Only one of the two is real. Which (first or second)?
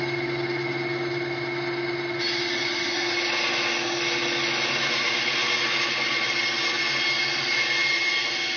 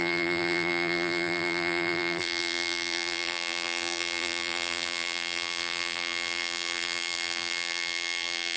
first